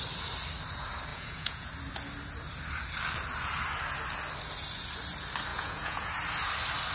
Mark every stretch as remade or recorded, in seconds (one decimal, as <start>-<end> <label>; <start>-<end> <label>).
0.0-1.1 recorded; 1.1-1.7 remade; 1.7-5.5 recorded; 5.5-6.1 remade; 6.1-6.9 recorded